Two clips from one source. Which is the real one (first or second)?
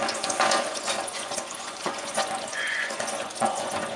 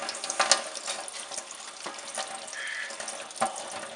second